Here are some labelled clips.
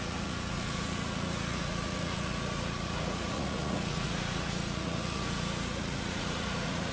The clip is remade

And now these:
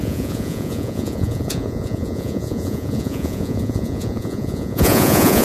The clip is remade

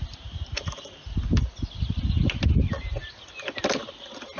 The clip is recorded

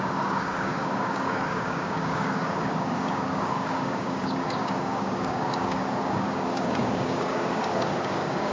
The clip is remade